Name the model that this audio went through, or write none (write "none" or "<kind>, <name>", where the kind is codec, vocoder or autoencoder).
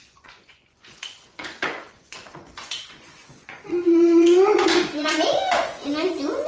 vocoder, Vocos